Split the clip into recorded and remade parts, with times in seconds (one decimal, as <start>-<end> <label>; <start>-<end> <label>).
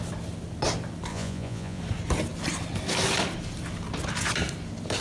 0.0-1.1 recorded; 1.1-1.8 remade; 1.8-5.0 recorded